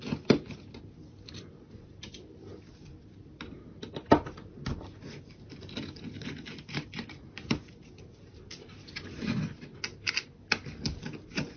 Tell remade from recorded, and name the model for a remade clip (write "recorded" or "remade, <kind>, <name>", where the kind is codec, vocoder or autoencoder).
recorded